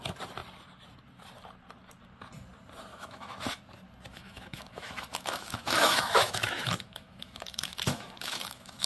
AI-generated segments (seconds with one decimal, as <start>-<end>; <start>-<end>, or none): 2.9-3.6; 4.1-8.9